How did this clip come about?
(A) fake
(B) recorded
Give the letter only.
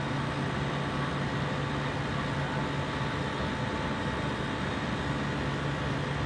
B